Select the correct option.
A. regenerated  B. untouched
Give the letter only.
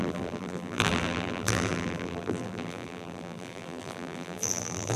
A